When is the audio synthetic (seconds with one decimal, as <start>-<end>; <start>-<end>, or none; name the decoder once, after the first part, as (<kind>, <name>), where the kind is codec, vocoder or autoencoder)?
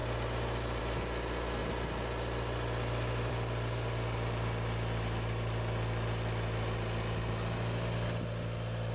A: none